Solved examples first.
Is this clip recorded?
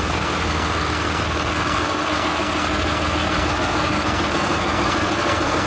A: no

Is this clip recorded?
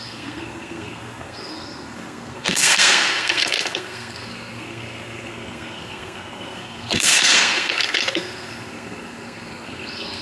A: no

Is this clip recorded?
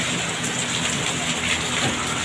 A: yes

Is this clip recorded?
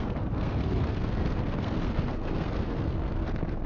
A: no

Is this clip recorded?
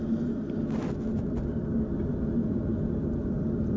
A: yes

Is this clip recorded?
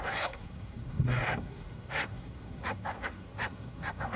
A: no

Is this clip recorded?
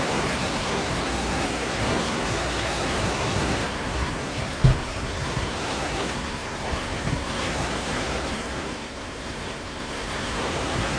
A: no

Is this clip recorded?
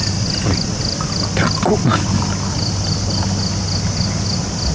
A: yes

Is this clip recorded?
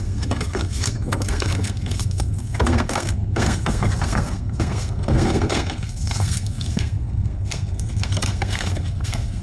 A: no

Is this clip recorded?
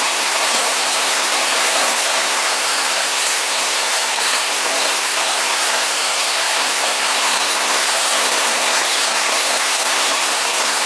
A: no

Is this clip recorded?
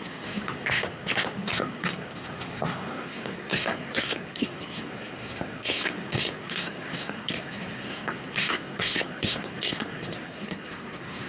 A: no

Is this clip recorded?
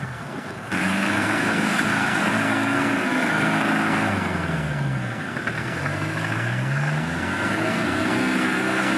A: no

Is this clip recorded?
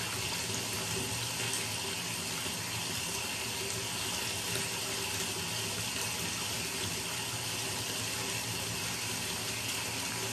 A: yes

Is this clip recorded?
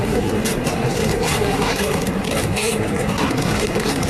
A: no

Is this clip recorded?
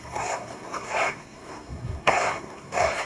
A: no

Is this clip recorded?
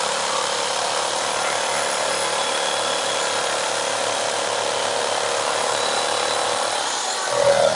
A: yes